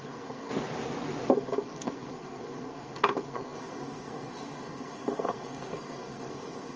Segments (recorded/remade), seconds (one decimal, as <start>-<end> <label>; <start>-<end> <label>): 0.0-0.5 remade; 0.5-1.3 recorded; 1.3-6.8 remade